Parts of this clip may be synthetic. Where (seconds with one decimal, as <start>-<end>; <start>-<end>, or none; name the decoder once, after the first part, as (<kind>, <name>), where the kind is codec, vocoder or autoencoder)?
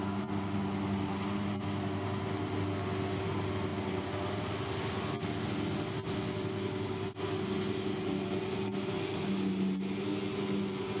none